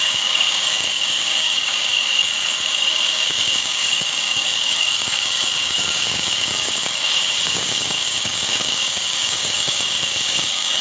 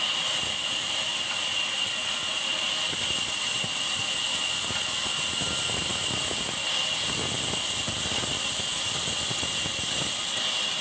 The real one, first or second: second